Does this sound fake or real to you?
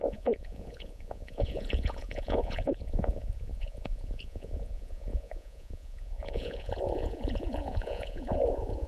fake